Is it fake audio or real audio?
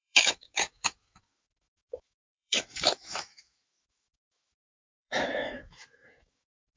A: fake